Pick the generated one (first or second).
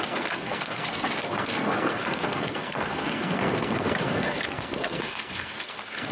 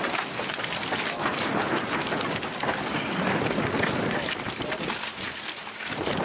first